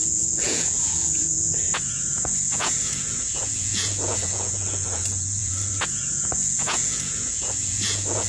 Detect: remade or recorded remade